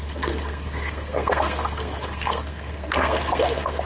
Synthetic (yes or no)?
yes